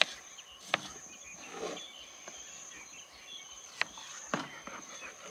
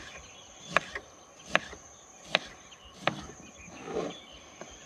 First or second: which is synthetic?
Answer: second